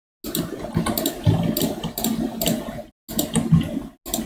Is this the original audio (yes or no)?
yes